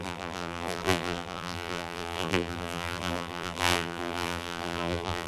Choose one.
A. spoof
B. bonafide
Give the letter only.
A